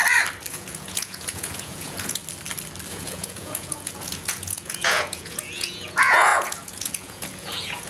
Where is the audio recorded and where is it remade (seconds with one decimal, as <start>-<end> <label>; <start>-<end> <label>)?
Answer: 0.0-0.5 recorded; 0.5-2.2 remade; 2.2-2.9 recorded; 2.9-7.9 remade

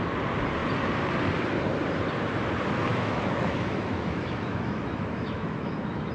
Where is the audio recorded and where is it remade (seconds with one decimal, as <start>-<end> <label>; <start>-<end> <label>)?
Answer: 0.0-2.9 recorded; 2.9-6.1 remade

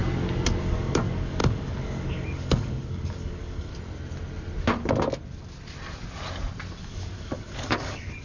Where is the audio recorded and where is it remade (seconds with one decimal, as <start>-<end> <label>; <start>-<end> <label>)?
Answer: 0.0-0.6 recorded; 0.6-3.7 remade; 3.7-6.8 recorded; 6.8-8.2 remade